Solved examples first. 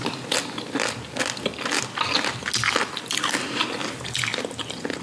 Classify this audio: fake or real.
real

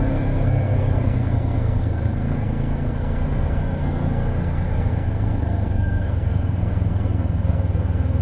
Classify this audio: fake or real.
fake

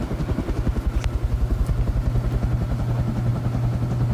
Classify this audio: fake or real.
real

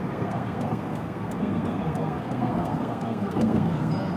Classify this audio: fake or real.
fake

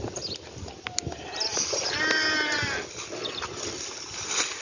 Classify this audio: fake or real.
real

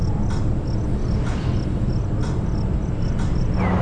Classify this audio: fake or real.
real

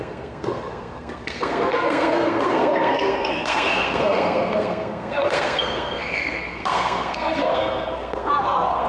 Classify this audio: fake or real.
fake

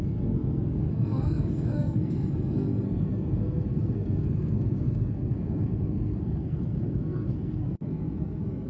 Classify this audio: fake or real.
fake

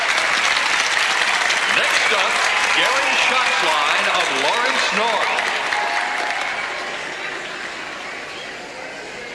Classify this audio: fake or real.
real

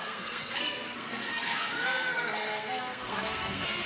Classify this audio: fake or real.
fake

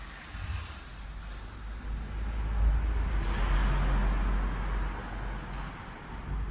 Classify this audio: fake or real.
real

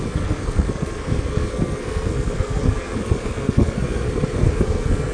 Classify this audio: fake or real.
fake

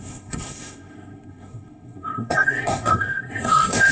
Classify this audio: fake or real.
fake